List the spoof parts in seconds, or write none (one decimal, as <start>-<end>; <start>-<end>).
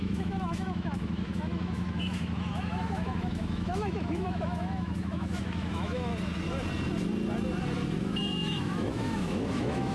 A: 0.0-6.1; 8.0-9.9